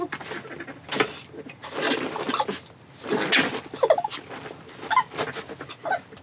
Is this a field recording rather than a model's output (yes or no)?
yes